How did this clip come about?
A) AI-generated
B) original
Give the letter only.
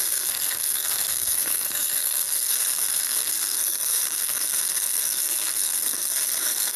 A